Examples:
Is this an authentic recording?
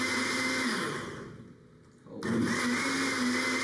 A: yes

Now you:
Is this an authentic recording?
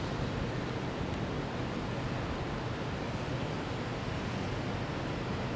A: yes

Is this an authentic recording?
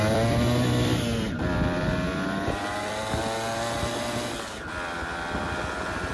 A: no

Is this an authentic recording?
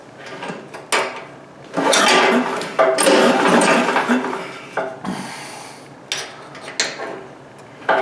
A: yes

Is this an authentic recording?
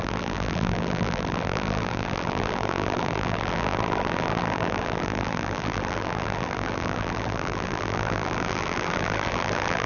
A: no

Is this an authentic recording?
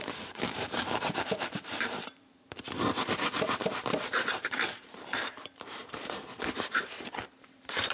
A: no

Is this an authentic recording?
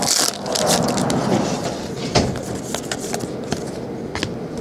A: yes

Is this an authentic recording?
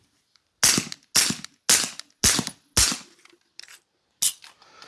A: yes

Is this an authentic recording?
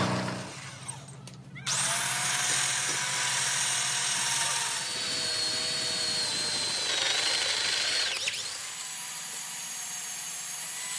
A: yes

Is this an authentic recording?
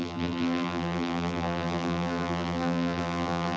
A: no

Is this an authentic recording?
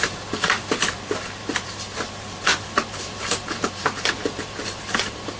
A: no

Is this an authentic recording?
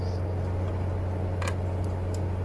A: no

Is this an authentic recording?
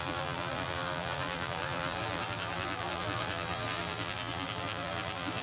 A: no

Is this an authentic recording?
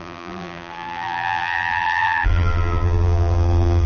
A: no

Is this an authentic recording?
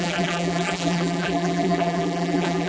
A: no